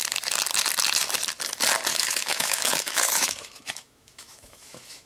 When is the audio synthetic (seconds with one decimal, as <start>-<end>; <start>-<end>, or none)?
1.9-5.1